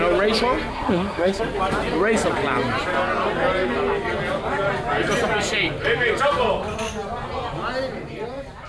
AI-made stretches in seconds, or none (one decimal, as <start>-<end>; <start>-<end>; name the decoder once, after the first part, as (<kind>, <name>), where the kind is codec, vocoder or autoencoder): 0.7-1.4 (codec, SNAC)